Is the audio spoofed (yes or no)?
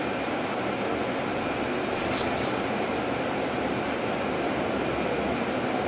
no